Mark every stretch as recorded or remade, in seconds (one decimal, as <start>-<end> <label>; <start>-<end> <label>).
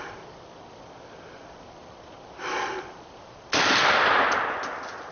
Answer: 0.0-5.1 recorded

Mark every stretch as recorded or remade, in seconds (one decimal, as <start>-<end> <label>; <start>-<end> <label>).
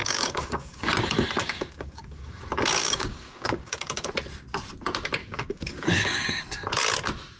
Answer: 0.0-0.9 remade; 0.9-1.4 recorded; 1.4-2.4 remade; 2.4-2.8 recorded; 2.8-4.1 remade; 4.1-5.2 recorded; 5.2-6.4 remade; 6.4-7.4 recorded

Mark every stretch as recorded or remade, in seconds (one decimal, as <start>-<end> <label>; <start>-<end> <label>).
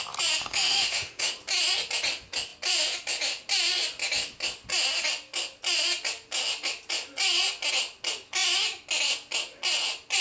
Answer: 0.0-0.4 recorded; 0.4-1.3 remade; 1.3-10.2 recorded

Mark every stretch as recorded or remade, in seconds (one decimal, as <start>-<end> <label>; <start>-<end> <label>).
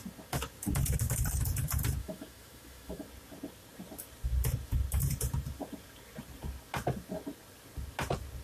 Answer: 0.0-2.0 recorded; 2.0-3.0 remade; 3.0-8.4 recorded